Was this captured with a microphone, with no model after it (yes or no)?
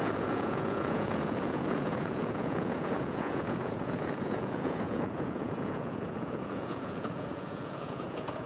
no